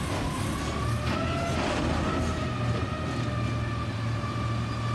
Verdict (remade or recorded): recorded